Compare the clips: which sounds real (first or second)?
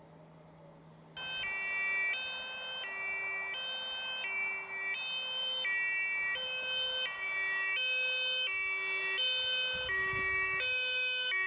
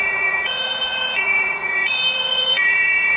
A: first